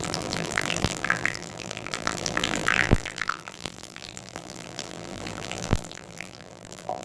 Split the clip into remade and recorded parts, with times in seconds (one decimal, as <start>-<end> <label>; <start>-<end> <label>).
0.0-7.0 remade